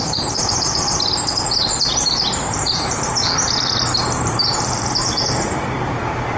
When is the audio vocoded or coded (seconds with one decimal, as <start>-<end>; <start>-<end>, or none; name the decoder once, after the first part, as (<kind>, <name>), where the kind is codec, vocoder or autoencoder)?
0.0-3.1 (vocoder, BigVGAN v2); 4.3-6.4